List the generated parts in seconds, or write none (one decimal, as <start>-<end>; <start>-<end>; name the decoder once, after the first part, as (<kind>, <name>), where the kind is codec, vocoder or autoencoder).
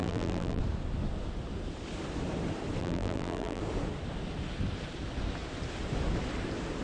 0.0-0.6 (vocoder, BigVGAN v2); 2.8-3.6